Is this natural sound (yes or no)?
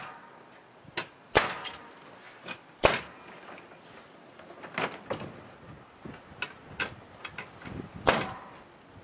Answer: yes